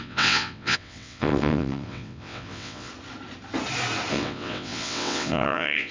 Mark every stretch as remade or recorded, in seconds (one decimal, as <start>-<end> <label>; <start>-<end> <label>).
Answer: 0.0-2.9 remade; 2.9-4.1 recorded; 4.1-5.9 remade